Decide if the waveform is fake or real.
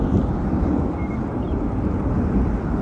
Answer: real